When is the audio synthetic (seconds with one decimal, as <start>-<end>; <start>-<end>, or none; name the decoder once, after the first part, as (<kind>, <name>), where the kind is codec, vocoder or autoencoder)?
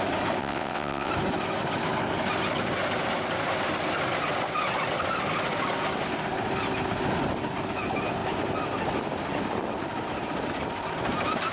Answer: 0.4-1.1 (vocoder, WaveNeXt)